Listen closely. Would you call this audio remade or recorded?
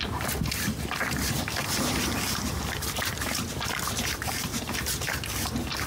recorded